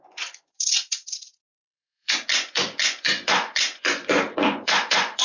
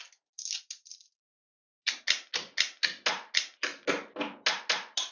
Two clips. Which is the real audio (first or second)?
second